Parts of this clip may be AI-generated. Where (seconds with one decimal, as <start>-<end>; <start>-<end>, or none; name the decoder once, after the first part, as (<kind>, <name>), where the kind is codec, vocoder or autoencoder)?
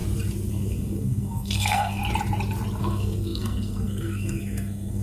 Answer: 0.5-2.0 (codec, SNAC); 2.8-5.0